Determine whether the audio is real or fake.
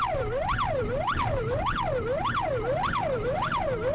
fake